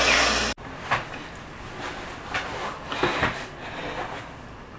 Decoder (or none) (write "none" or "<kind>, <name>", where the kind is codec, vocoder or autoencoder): none